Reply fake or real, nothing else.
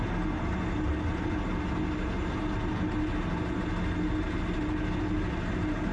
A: real